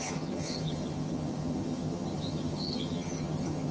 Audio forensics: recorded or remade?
remade